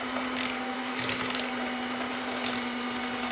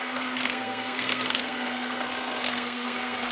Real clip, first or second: first